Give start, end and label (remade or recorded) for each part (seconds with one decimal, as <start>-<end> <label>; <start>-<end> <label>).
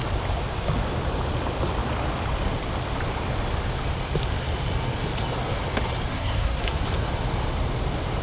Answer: 0.0-6.1 recorded; 6.1-6.8 remade; 6.8-8.2 recorded